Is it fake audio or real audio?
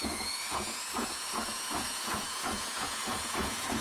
fake